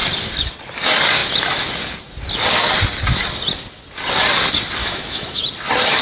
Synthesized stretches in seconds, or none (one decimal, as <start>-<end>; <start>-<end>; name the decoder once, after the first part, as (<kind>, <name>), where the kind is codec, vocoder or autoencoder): 4.8-5.4 (autoencoder, DAC-VAE)